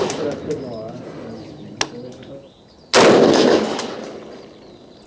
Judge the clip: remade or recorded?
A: recorded